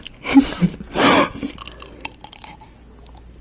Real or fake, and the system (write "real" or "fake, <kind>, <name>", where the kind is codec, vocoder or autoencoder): real